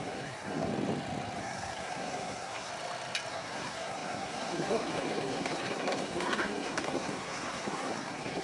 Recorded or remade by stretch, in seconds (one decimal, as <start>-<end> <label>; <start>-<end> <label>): 0.0-0.7 remade; 0.7-1.4 recorded; 1.4-2.7 remade; 2.7-3.3 recorded; 3.3-8.4 remade